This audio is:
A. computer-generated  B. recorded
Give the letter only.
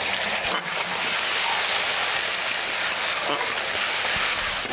B